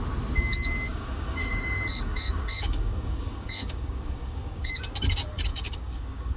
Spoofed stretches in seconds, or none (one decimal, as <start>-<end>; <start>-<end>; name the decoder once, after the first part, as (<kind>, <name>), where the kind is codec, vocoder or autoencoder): 0.9-4.7 (codec, DAC); 5.5-6.4